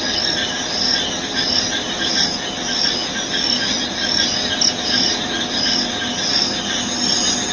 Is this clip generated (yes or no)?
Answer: no